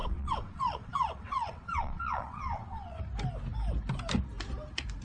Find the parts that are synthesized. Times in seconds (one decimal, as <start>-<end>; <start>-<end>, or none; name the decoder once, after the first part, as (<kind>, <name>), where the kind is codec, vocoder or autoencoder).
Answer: 0.0-3.0 (vocoder, WaveNeXt)